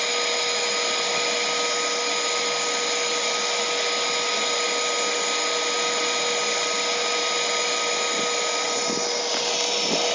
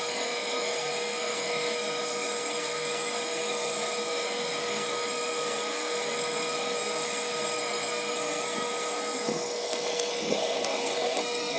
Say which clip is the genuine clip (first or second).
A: first